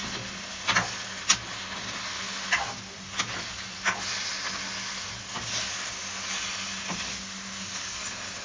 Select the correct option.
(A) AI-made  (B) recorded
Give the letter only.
B